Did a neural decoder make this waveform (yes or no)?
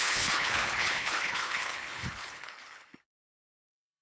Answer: yes